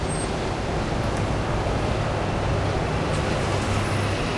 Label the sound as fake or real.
real